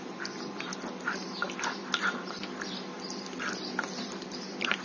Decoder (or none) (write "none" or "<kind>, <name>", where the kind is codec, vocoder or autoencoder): none